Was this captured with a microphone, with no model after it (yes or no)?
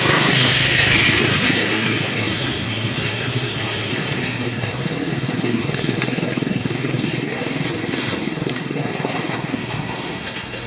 no